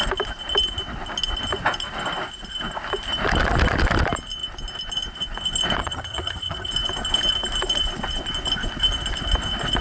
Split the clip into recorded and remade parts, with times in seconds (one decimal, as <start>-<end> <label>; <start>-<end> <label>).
0.0-5.8 recorded; 5.8-6.7 remade; 6.7-9.8 recorded